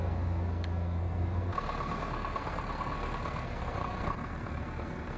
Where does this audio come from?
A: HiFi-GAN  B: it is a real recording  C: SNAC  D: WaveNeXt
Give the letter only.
C